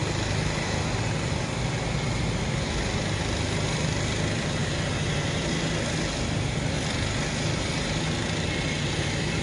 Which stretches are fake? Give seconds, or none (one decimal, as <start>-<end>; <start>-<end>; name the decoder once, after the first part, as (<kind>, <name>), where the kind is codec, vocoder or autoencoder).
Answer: none